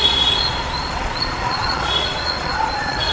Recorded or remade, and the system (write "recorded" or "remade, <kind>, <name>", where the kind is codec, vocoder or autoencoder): remade, vocoder, Vocos